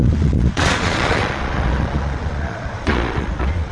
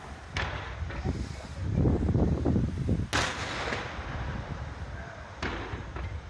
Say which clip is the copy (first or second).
first